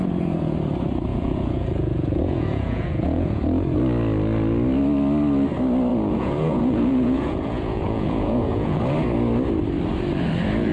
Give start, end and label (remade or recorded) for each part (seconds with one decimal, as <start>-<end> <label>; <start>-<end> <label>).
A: 0.0-1.1 recorded; 1.1-3.4 remade; 3.4-5.9 recorded; 5.9-8.8 remade; 8.8-10.7 recorded